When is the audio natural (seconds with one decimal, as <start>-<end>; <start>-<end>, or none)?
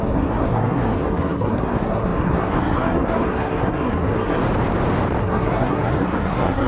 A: 4.4-5.2